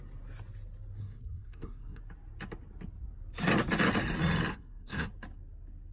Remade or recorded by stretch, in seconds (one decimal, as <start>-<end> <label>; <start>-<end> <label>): 0.0-1.0 recorded; 1.0-2.0 remade; 2.0-4.5 recorded; 4.5-5.1 remade; 5.1-5.9 recorded